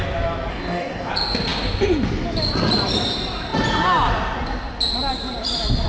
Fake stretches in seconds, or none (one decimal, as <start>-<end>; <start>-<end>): 0.5-1.1